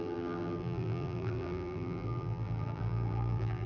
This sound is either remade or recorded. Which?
remade